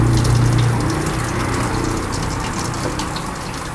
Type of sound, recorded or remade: recorded